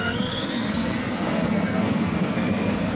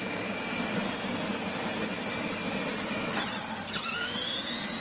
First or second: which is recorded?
second